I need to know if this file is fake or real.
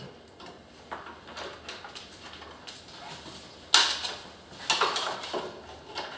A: real